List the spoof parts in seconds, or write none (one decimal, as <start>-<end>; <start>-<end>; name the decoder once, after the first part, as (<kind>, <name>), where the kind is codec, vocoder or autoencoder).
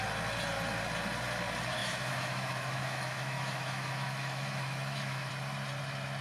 1.8-5.3 (autoencoder, DAC-VAE)